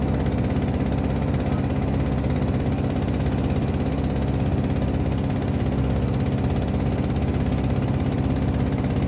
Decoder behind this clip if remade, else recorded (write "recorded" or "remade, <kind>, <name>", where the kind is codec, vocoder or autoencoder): recorded